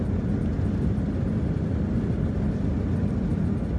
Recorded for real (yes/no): yes